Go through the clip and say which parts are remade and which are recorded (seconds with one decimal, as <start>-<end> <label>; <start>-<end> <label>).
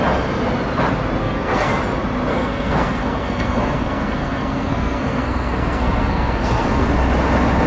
0.0-1.2 recorded; 1.2-1.8 remade; 1.8-2.3 recorded; 2.3-6.9 remade; 6.9-7.7 recorded